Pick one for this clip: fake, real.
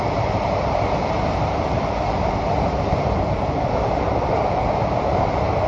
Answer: fake